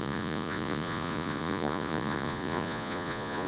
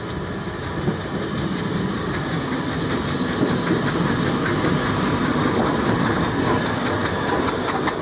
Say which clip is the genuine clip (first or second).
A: second